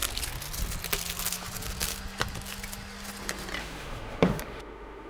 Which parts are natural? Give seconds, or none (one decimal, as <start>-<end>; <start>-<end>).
0.0-3.6